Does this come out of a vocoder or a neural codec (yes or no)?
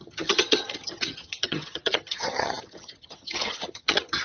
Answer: yes